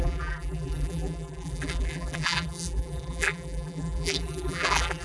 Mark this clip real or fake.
fake